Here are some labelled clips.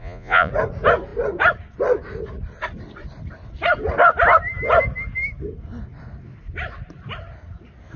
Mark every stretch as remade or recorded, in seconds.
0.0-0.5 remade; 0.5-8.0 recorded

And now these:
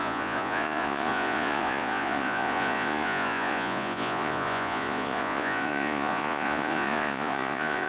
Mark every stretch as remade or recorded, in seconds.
0.0-7.9 remade

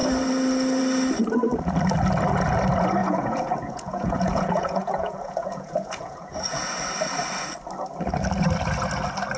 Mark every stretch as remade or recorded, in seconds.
0.0-3.0 recorded; 3.0-6.7 remade; 6.7-9.4 recorded

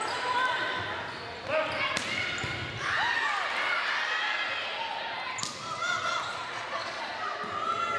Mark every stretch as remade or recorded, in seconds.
0.0-6.3 recorded; 6.3-7.0 remade; 7.0-8.0 recorded

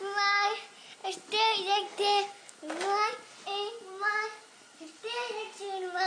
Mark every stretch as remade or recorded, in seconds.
0.0-6.1 recorded

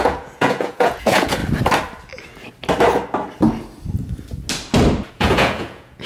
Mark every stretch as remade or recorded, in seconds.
0.0-1.4 remade; 1.4-5.1 recorded; 5.1-6.1 remade